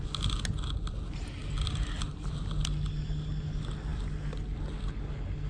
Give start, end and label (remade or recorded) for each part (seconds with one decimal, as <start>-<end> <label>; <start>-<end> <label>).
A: 0.0-5.5 recorded